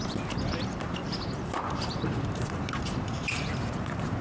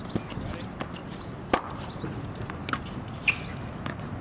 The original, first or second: second